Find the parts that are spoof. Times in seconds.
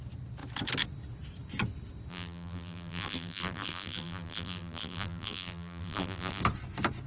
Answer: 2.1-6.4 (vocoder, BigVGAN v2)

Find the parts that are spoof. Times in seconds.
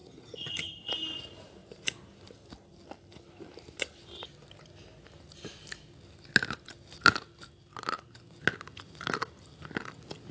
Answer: 0.0-0.9 (vocoder, HiFi-GAN)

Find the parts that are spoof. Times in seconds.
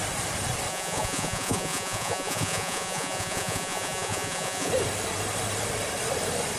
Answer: 0.7-4.7 (vocoder, Vocos)